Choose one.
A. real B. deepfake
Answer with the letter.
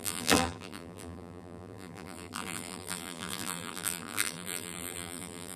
B